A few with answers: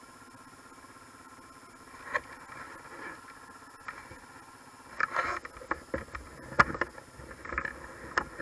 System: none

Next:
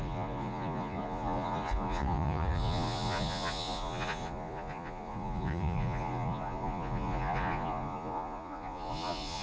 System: vocoder, Vocos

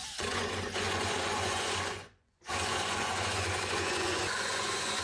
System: vocoder, Vocos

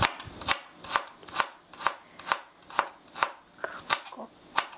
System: none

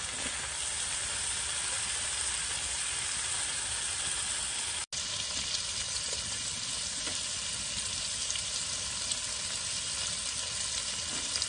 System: none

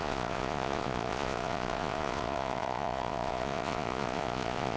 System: vocoder, Vocos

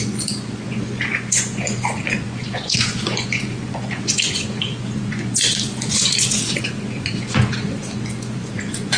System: vocoder, Vocos